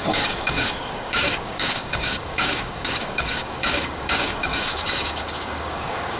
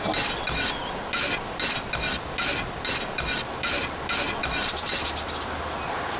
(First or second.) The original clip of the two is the second